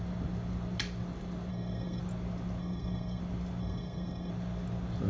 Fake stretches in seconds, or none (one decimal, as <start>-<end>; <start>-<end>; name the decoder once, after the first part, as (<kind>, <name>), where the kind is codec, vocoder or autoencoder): 1.5-2.0 (codec, SNAC); 2.6-3.2; 3.6-4.3